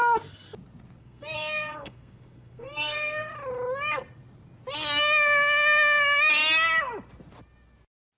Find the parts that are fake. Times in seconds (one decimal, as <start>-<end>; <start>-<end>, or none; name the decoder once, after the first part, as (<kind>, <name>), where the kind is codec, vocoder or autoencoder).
1.0-3.3 (codec, SNAC)